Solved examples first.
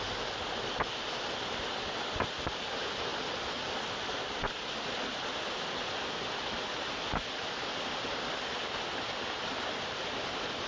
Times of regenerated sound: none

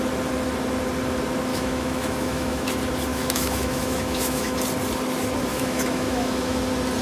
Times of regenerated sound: 1.5-2.7 (autoencoder, DAC-VAE); 3.1-4.6; 5.5-6.6

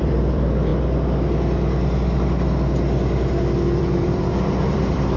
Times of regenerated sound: 0.0-0.7 (vocoder, BigVGAN v2); 3.8-5.2

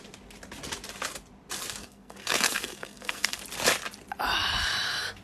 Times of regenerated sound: 1.8-3.4 (codec, SNAC)

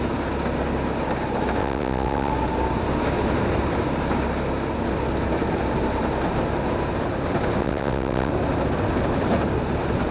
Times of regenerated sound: 1.6-2.3 (vocoder, WaveNeXt); 7.6-8.3

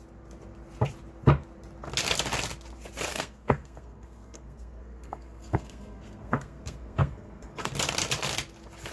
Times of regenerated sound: 3.1-7.7 (codec, SNAC)

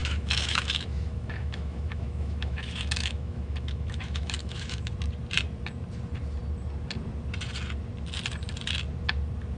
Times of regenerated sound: 0.0-4.9 (autoencoder, DAC-VAE)